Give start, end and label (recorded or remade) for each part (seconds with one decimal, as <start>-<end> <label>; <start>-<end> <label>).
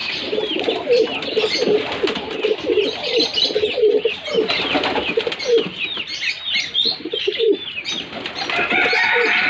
0.0-9.5 recorded